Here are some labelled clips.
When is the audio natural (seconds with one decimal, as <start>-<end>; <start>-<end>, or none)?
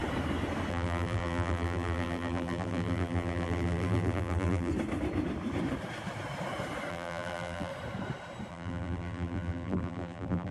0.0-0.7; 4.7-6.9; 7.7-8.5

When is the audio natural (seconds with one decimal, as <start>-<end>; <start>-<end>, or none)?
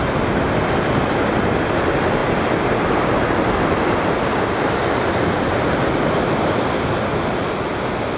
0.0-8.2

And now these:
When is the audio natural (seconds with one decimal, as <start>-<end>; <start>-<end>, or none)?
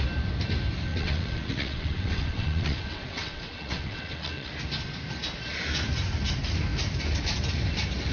0.0-0.9; 4.5-8.1